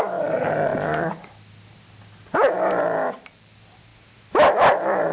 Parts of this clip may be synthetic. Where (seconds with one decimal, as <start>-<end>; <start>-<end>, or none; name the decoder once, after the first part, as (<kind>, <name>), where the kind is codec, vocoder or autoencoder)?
none